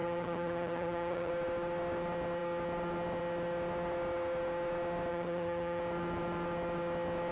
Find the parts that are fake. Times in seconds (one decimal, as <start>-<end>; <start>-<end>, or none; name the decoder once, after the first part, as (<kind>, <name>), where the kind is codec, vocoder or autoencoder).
0.0-1.3 (vocoder, HiFi-GAN); 5.1-5.8

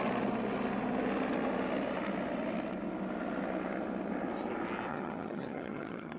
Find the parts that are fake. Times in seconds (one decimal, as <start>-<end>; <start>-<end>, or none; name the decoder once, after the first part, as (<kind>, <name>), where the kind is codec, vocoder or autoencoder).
4.9-6.2 (vocoder, HiFi-GAN)

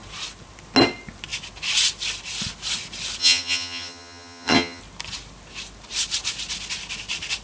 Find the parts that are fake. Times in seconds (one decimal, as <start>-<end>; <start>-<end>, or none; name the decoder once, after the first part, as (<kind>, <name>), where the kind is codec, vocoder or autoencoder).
3.2-4.8 (vocoder, HiFi-GAN)

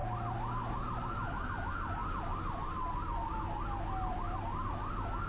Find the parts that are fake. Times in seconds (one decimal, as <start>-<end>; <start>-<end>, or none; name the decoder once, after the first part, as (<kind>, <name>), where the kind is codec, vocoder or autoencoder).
none

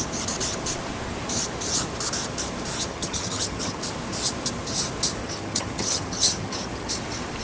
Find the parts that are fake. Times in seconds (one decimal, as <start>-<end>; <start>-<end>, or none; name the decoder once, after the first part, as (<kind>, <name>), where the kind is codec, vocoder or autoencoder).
2.9-3.8 (vocoder, HiFi-GAN); 5.2-6.9